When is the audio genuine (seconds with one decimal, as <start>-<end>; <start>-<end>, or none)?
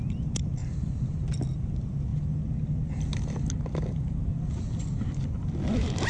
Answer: 0.0-6.1